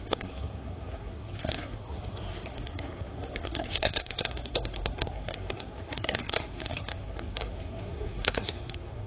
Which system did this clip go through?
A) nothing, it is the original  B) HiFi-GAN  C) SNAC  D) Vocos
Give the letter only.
C